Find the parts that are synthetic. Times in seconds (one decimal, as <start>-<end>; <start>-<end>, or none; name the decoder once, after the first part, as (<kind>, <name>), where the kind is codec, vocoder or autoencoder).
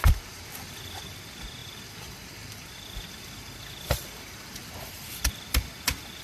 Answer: 0.0-1.2 (vocoder, BigVGAN v2); 1.6-5.3